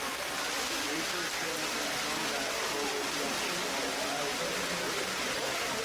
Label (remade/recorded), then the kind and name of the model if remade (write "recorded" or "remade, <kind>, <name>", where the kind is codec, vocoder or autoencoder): recorded